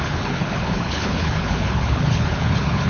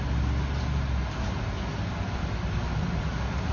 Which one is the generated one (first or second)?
first